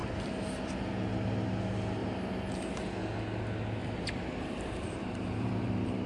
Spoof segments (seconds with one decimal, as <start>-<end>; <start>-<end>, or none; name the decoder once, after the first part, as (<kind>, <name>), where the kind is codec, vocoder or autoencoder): 0.0-0.9 (vocoder, BigVGAN v2); 2.0-2.5; 3.8-6.1